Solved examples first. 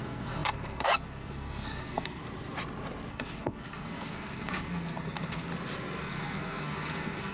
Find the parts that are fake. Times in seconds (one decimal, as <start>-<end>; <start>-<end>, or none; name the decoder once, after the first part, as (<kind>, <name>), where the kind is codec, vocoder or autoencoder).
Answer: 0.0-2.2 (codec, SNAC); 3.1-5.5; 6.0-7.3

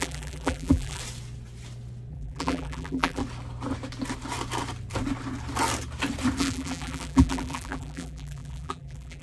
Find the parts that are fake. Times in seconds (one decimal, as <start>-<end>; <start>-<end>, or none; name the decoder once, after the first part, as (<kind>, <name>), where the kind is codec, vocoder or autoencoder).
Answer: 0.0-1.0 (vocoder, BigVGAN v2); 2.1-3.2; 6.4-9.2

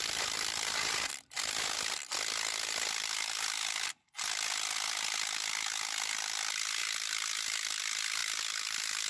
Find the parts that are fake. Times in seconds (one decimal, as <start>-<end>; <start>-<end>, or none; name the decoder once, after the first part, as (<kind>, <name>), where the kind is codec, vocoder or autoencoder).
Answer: none

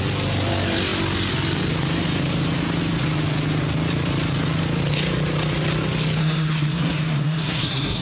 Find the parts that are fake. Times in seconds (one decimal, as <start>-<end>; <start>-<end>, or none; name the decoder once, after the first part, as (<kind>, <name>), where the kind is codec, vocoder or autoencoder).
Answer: 6.2-8.0 (codec, SNAC)